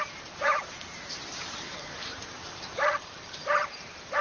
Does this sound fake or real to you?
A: fake